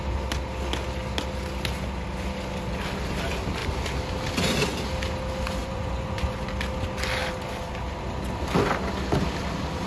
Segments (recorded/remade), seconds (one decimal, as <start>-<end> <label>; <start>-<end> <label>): 0.0-5.6 recorded; 5.6-6.4 remade; 6.4-9.9 recorded